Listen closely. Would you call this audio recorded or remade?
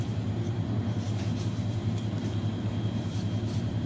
remade